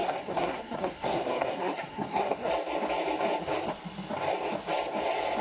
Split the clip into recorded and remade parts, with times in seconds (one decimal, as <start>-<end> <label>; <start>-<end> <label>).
0.0-2.5 remade; 2.5-5.4 recorded